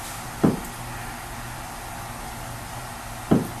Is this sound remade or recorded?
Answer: recorded